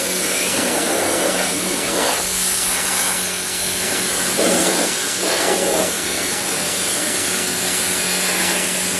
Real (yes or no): no